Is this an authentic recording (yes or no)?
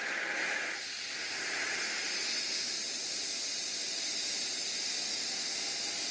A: yes